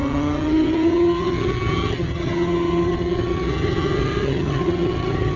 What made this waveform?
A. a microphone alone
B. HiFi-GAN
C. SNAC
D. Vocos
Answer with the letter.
B